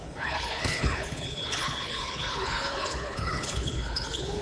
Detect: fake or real fake